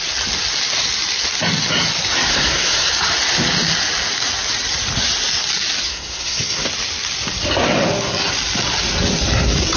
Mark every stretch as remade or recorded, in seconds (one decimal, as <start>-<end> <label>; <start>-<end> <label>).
0.0-2.3 recorded; 2.3-2.9 remade; 2.9-5.9 recorded; 5.9-6.7 remade; 6.7-9.8 recorded